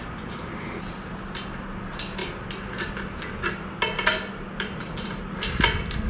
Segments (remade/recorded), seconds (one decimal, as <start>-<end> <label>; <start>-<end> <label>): 0.0-6.1 recorded